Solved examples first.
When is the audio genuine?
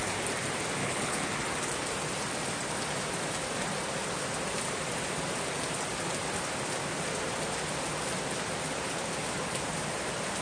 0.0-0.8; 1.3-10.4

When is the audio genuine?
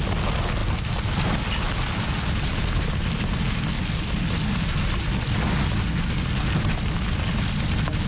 0.0-8.1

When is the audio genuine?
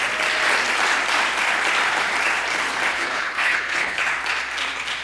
0.0-2.9; 4.0-5.0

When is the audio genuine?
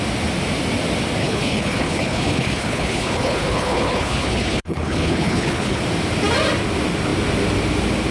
0.0-1.2; 5.8-8.1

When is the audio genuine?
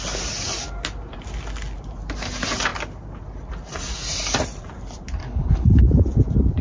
0.0-5.2; 5.8-6.6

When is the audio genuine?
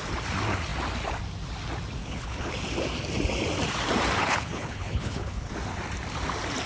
0.0-2.0; 2.5-4.2; 5.5-6.7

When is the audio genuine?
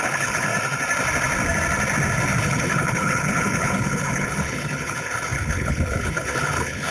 0.5-2.4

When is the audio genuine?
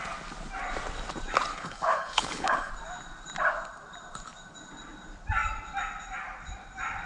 0.0-1.5; 2.7-7.1